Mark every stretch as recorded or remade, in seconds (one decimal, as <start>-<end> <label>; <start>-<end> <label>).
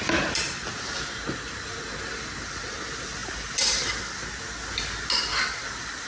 0.0-6.1 recorded